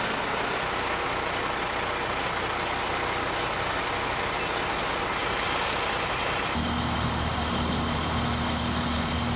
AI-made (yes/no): no